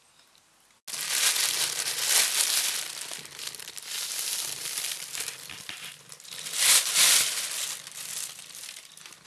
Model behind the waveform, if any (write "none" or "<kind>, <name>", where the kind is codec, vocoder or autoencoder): none